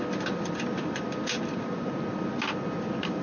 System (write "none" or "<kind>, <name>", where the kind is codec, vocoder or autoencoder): none